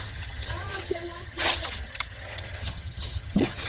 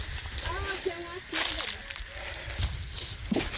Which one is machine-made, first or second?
first